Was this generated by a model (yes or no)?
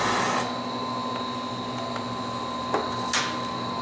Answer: no